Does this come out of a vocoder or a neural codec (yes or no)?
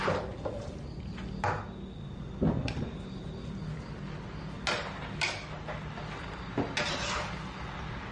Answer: no